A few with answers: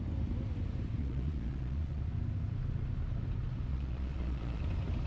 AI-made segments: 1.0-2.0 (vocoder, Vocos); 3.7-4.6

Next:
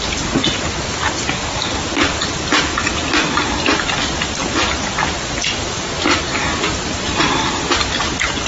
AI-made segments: none

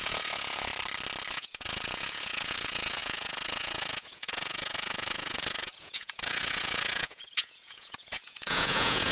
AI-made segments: 0.0-0.7 (vocoder, Vocos); 1.3-9.1

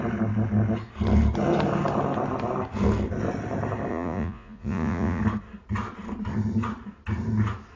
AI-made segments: 3.9-5.2 (vocoder, Vocos)